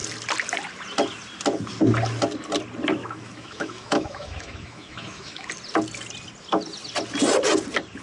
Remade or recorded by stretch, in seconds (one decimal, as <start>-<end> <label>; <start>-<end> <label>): 0.0-3.0 recorded; 3.0-5.5 remade; 5.5-8.0 recorded